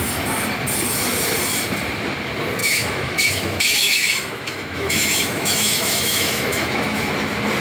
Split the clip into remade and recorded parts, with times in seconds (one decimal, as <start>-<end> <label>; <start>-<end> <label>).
0.0-2.6 recorded; 2.6-7.0 remade; 7.0-7.6 recorded